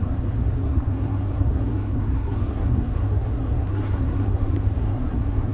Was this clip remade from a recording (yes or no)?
yes